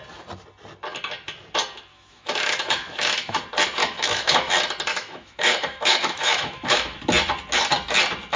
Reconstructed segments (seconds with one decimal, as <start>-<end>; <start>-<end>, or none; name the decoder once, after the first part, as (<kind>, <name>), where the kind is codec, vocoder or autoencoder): 1.9-3.4 (autoencoder, DAC-VAE); 3.8-4.5; 4.9-7.0